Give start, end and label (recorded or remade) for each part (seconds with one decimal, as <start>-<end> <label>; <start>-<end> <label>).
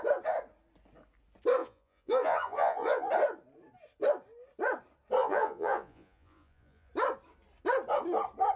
0.0-1.6 recorded; 1.6-3.1 remade; 3.1-5.2 recorded; 5.2-6.9 remade; 6.9-8.6 recorded